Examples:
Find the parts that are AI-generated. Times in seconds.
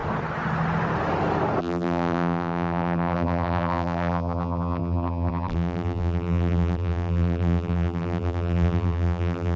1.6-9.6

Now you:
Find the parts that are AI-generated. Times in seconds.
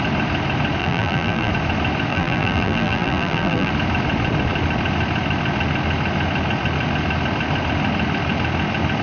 0.8-1.5; 2.1-3.7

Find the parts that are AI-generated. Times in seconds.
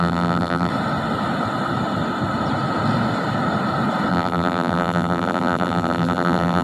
0.0-0.7; 4.1-6.6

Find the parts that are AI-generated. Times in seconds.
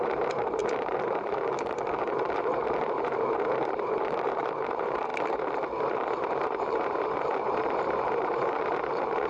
0.0-5.1; 6.2-9.3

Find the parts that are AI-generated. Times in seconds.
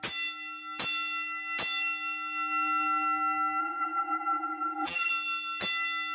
3.6-5.1